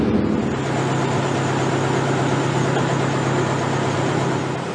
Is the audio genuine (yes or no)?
yes